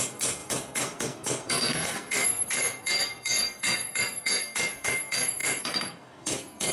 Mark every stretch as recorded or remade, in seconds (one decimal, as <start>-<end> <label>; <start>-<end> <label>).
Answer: 0.0-6.7 remade